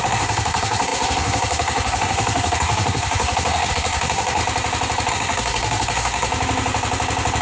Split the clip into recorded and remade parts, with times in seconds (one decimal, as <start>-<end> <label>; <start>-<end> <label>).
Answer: 0.0-4.4 remade; 4.4-5.1 recorded; 5.1-6.3 remade; 6.3-7.4 recorded